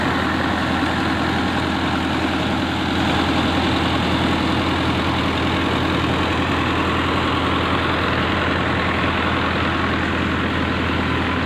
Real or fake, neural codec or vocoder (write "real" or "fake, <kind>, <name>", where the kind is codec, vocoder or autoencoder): real